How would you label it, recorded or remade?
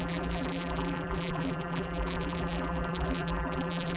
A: remade